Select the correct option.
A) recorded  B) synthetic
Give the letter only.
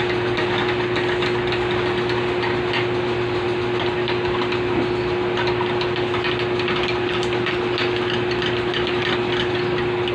A